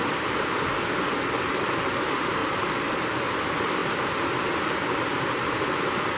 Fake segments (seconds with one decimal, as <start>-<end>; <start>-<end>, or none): 2.4-2.9; 3.8-4.9